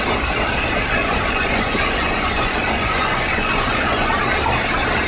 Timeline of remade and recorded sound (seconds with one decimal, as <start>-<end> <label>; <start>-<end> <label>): 0.0-1.0 recorded; 1.0-4.1 remade; 4.1-5.1 recorded